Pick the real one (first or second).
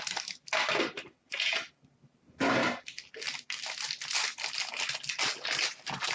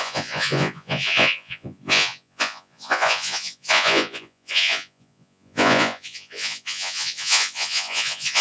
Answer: first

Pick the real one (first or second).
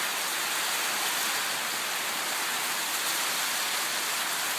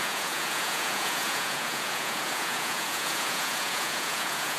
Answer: first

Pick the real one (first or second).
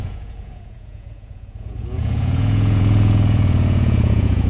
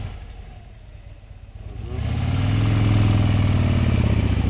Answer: second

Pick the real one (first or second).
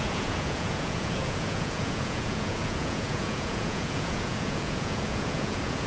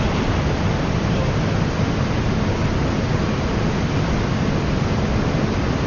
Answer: second